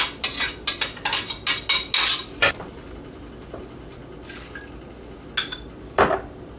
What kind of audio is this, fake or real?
real